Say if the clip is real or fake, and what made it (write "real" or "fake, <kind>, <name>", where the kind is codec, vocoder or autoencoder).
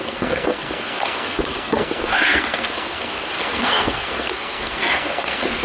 fake, codec, SNAC